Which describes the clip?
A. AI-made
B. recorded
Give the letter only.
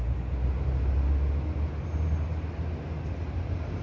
B